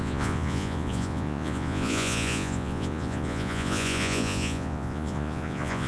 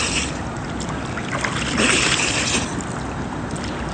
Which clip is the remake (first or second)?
first